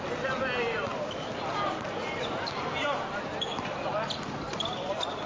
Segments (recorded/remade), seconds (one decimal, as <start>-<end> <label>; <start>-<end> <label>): 0.0-5.3 recorded